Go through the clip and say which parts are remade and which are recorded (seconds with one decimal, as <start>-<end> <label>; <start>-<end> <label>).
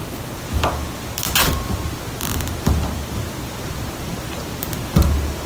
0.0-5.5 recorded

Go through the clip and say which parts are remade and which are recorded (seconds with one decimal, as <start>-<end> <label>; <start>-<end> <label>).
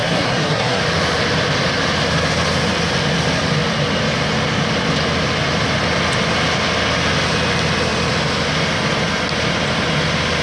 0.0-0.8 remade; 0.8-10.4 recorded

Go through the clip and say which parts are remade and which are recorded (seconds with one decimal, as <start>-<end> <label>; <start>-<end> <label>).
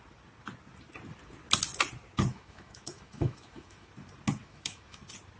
0.0-2.3 recorded; 2.3-3.9 remade; 3.9-4.4 recorded; 4.4-5.0 remade; 5.0-5.4 recorded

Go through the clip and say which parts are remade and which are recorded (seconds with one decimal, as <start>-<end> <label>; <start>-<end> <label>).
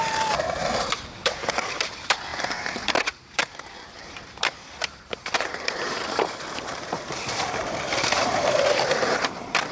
0.0-9.7 remade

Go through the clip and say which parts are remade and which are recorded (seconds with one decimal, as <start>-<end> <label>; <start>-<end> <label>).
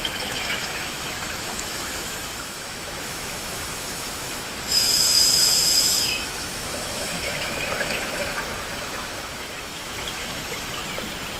0.0-10.8 remade; 10.8-11.4 recorded